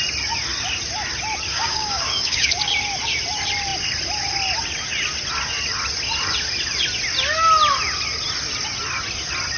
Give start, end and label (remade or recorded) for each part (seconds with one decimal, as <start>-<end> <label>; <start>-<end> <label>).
0.0-1.5 recorded; 1.5-2.5 remade; 2.5-9.6 recorded